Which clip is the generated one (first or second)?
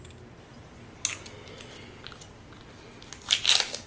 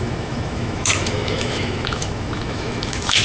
second